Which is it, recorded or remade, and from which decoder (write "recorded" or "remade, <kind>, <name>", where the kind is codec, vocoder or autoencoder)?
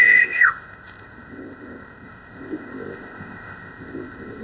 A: remade, codec, ZipCodec